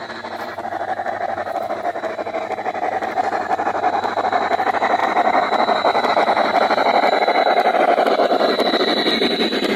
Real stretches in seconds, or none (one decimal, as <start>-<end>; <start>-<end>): 0.0-9.8